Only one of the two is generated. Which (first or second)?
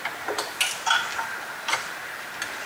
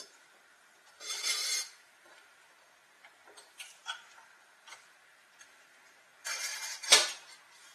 second